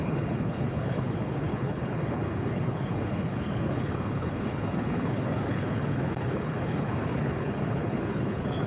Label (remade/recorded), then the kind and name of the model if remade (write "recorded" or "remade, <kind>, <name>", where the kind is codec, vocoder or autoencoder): remade, codec, HILCodec